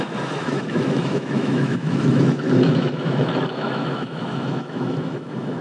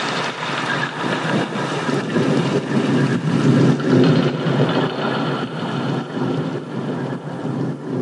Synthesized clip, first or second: first